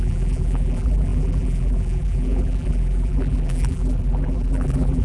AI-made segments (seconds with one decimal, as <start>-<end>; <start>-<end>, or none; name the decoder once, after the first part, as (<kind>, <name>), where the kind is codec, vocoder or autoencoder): 0.0-5.0 (vocoder, BigVGAN v2)